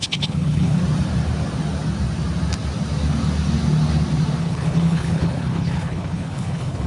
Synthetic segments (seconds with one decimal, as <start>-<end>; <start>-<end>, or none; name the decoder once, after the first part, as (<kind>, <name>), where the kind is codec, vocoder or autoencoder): 0.0-0.8 (codec, HILCodec); 4.4-6.9